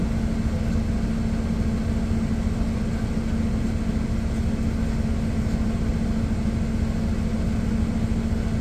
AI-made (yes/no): no